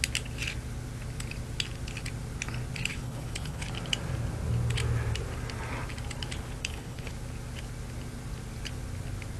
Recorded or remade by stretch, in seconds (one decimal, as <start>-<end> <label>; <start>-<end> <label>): 0.0-2.9 recorded; 2.9-3.7 remade; 3.7-6.6 recorded; 6.6-7.1 remade; 7.1-9.4 recorded